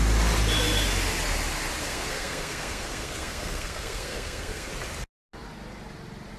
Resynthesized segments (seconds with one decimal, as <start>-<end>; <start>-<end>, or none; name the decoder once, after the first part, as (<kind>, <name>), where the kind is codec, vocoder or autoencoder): 1.8-4.7 (codec, SNAC)